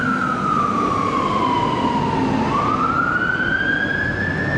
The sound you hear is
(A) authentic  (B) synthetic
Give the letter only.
A